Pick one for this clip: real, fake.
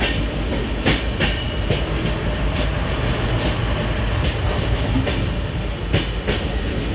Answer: real